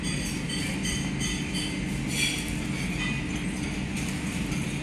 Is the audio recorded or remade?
recorded